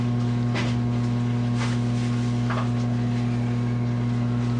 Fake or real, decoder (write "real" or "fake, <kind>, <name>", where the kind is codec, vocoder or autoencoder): real